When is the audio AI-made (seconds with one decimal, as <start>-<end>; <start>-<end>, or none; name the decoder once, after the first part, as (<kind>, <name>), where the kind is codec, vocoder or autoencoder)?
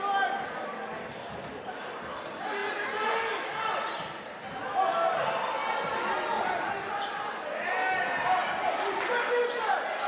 none